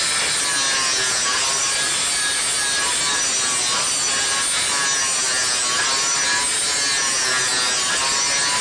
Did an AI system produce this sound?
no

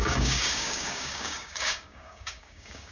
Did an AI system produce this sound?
yes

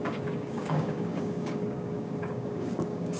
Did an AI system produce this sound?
yes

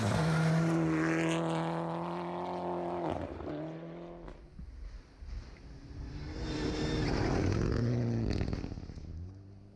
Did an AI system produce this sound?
no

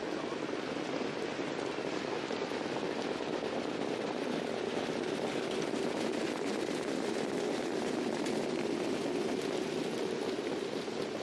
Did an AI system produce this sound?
no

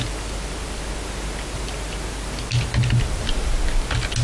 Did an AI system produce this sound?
no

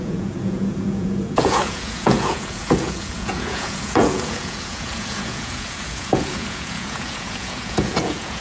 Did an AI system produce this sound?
yes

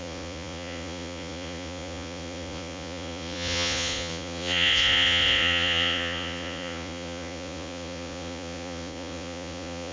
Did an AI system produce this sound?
yes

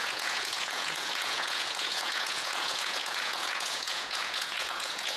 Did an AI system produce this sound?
yes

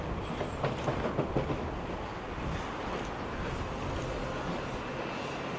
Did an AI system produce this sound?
no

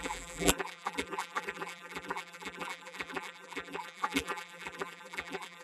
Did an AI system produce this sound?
yes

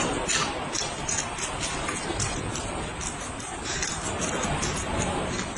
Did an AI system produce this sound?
no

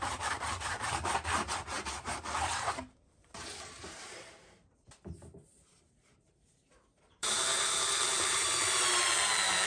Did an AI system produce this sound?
yes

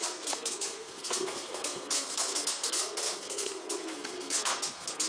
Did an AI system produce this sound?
yes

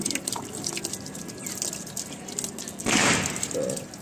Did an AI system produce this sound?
no